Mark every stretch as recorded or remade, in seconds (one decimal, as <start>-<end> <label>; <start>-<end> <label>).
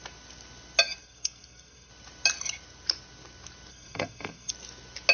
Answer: 0.0-1.0 recorded; 1.0-1.9 remade; 1.9-3.7 recorded; 3.7-4.5 remade; 4.5-5.1 recorded